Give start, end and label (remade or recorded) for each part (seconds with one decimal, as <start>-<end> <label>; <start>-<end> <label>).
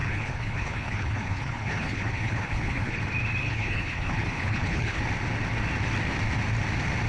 0.0-3.0 remade; 3.0-3.4 recorded; 3.4-5.0 remade; 5.0-7.1 recorded